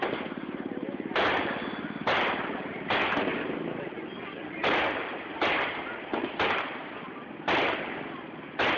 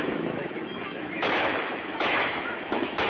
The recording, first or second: first